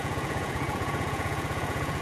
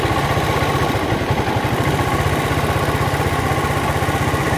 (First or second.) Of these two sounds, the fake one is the first